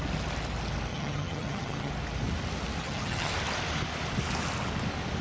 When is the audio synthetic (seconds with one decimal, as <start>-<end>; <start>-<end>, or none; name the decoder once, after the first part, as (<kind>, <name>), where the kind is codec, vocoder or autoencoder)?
0.9-1.9 (vocoder, HiFi-GAN); 2.8-3.3